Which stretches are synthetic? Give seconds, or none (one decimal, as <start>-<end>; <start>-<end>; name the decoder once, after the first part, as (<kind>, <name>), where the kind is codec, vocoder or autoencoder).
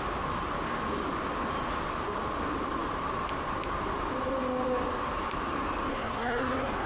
5.9-6.9 (codec, SNAC)